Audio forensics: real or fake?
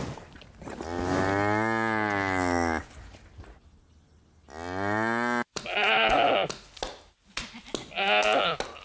real